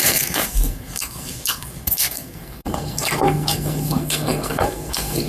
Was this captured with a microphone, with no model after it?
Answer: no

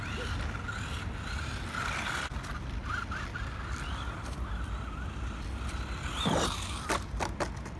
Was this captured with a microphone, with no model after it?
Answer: yes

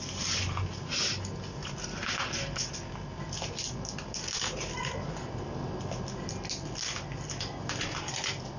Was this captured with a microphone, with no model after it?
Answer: yes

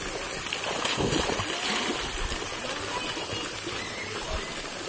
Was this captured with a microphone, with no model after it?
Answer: yes